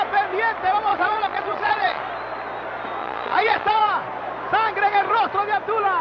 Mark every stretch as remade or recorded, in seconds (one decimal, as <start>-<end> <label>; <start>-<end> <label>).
0.0-0.9 recorded; 0.9-2.0 remade; 2.0-3.0 recorded; 3.0-3.9 remade; 3.9-6.0 recorded